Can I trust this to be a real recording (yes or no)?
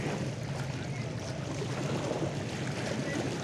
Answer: yes